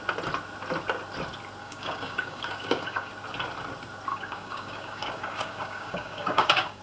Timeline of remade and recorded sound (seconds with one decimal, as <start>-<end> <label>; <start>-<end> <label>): 0.0-1.6 recorded; 1.6-3.1 remade; 3.1-4.1 recorded; 4.1-6.8 remade